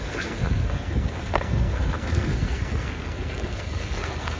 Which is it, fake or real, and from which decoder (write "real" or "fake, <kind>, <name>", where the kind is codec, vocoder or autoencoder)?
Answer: fake, codec, SNAC